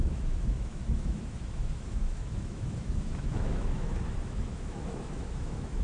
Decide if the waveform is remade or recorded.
remade